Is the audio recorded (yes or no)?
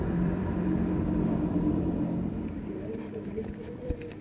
no